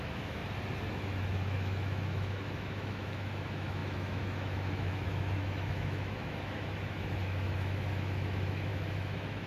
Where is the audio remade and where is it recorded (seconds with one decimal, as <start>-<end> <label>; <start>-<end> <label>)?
0.0-0.4 remade; 0.4-0.9 recorded; 0.9-9.5 remade